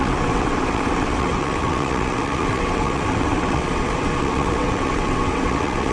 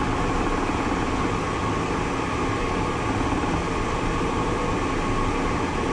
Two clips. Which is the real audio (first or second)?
second